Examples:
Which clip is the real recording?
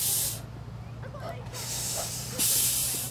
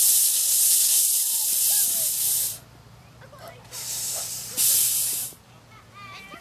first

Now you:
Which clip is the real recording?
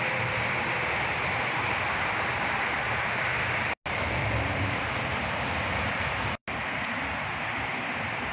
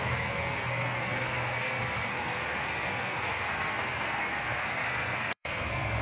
first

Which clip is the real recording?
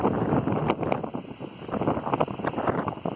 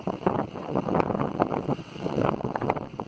first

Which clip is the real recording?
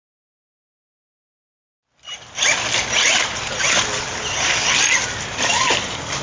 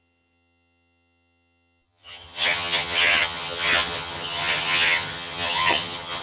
first